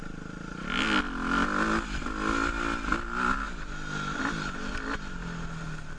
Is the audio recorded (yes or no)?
yes